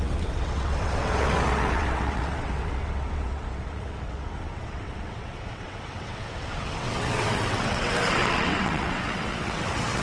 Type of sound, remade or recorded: remade